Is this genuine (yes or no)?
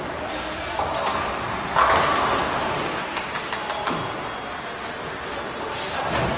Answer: yes